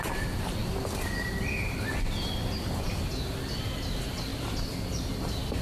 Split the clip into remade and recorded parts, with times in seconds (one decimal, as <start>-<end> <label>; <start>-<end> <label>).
0.0-5.6 recorded